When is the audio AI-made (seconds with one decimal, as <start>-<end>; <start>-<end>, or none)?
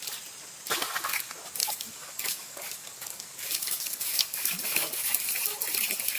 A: 1.6-5.3